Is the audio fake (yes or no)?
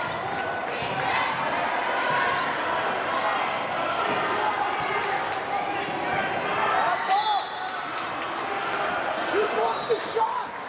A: no